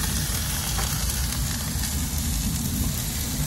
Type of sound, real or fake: real